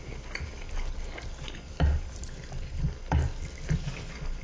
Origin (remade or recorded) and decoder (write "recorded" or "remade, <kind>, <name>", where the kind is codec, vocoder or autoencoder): recorded